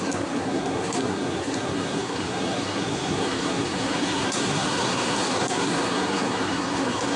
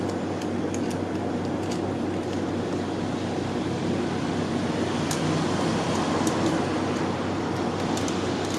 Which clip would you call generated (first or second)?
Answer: first